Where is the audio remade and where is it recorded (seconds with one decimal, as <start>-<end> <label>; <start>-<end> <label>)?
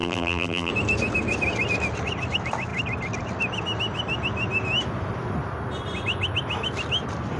0.0-0.7 remade; 0.7-7.4 recorded